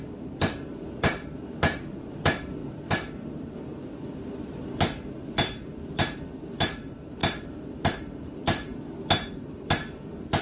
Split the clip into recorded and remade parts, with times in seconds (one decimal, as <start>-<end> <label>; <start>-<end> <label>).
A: 0.0-2.6 remade; 2.6-5.1 recorded; 5.1-10.4 remade